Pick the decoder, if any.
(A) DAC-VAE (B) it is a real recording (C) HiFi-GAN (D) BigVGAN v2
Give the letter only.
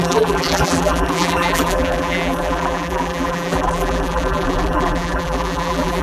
D